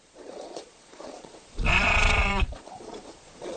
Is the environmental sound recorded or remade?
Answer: remade